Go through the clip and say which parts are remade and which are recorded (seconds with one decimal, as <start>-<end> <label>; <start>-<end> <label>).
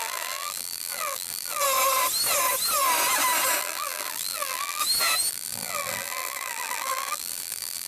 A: 0.0-1.6 remade; 1.6-3.6 recorded; 3.6-4.8 remade; 4.8-5.3 recorded; 5.3-7.9 remade